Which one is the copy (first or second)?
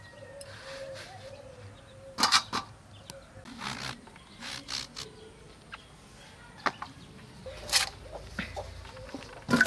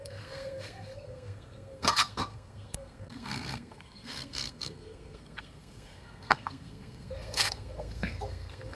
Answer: second